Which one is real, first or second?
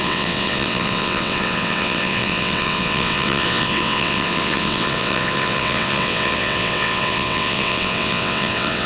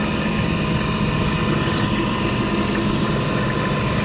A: second